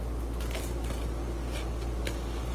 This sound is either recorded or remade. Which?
recorded